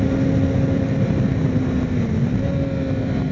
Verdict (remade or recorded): recorded